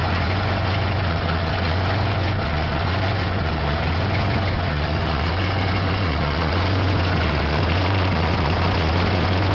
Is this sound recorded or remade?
remade